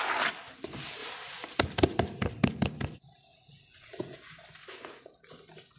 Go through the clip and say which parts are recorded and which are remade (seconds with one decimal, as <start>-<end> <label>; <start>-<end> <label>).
0.0-3.3 recorded; 3.3-4.1 remade; 4.1-5.8 recorded